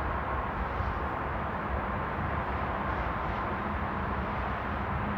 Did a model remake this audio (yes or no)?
no